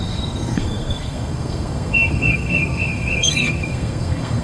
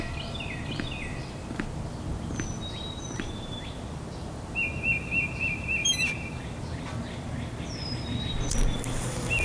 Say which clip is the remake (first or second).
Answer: first